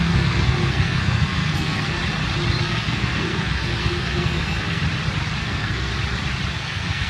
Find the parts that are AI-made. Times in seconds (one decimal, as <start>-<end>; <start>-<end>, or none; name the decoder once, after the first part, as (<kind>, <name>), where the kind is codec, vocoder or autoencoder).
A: 0.0-2.0 (codec, SNAC); 2.6-4.8; 5.4-5.9; 6.5-7.1